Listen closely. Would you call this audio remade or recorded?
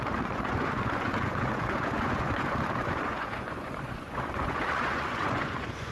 remade